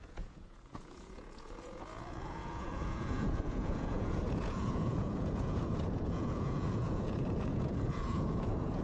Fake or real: fake